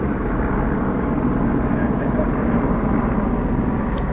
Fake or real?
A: real